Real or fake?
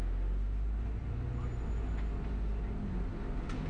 real